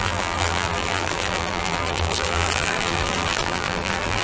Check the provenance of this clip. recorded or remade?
remade